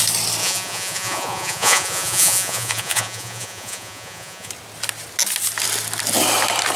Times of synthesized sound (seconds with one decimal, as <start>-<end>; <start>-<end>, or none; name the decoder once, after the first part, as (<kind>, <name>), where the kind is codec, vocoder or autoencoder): 0.4-4.5 (vocoder, Vocos)